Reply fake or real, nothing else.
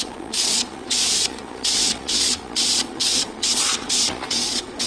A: fake